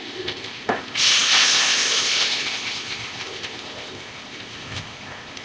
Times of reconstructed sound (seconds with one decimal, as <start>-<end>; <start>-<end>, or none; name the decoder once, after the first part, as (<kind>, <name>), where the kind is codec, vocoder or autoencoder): 0.0-5.4 (codec, ZipCodec)